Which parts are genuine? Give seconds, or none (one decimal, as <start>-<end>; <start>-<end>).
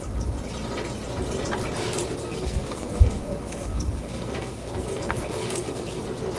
0.0-2.2; 6.0-6.4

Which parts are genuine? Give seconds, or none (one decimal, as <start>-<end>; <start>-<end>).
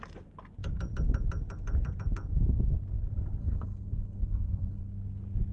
0.0-3.4; 4.8-5.5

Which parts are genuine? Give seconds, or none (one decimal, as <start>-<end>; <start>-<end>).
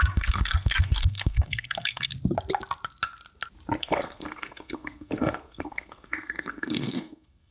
2.1-3.8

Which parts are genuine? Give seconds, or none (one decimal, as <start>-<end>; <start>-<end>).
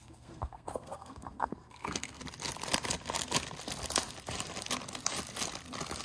2.2-6.0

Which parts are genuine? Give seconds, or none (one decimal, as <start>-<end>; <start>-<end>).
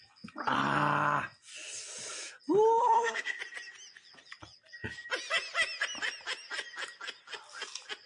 0.0-2.8; 3.4-8.1